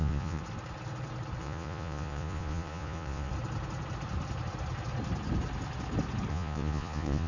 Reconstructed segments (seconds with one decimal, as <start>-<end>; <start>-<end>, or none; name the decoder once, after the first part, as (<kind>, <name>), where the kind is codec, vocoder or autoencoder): 0.0-0.4 (vocoder, Vocos); 1.4-3.3; 6.3-7.3